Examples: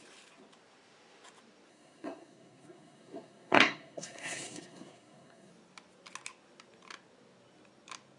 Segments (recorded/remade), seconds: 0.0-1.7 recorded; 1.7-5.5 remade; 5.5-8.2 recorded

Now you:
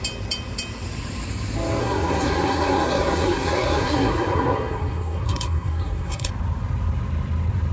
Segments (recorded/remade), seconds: 0.0-1.8 recorded; 1.8-6.3 remade; 6.3-7.7 recorded

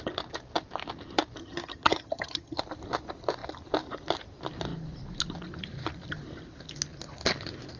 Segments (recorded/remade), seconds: 0.0-1.4 recorded; 1.4-2.6 remade; 2.6-7.8 recorded

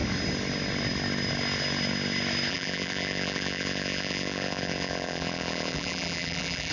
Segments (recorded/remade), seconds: 0.0-2.5 recorded; 2.5-6.7 remade

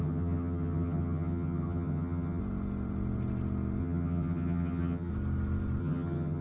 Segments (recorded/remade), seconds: 0.0-2.4 remade; 2.4-3.8 recorded; 3.8-5.1 remade; 5.1-5.8 recorded; 5.8-6.4 remade

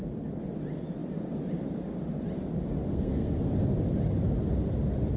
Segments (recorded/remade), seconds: 0.0-2.9 recorded; 2.9-3.4 remade; 3.4-5.2 recorded

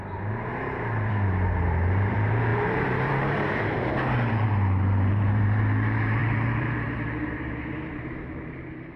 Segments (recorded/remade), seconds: 0.0-9.0 remade